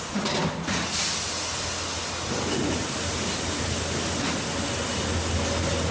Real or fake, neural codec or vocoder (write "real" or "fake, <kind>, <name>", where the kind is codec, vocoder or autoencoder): real